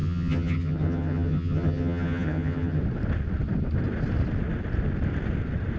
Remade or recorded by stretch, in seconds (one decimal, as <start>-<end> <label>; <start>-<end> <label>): 0.0-2.8 remade; 2.8-5.8 recorded